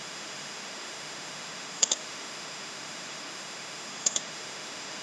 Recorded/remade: remade